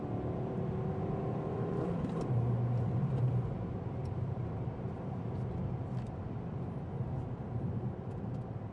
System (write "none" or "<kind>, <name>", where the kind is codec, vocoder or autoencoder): vocoder, BigVGAN v2